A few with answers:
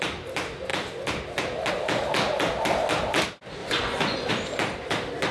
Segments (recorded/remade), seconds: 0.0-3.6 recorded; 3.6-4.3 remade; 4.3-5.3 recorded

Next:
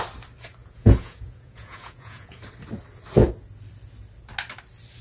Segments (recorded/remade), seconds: 0.0-0.6 recorded; 0.6-2.4 remade; 2.4-5.0 recorded